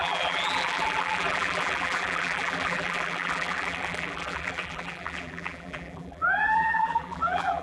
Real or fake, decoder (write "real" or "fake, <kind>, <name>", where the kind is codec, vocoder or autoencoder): fake, vocoder, BigVGAN v2